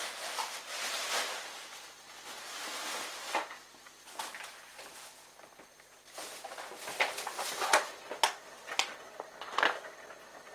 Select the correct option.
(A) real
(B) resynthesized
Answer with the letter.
A